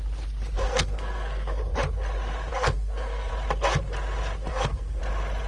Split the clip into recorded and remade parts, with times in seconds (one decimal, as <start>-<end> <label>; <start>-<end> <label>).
0.0-0.6 recorded; 0.6-1.6 remade; 1.6-2.5 recorded; 2.5-3.3 remade; 3.3-4.5 recorded; 4.5-5.0 remade; 5.0-5.5 recorded